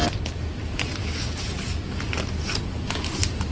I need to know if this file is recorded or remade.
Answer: recorded